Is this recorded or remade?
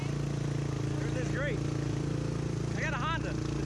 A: recorded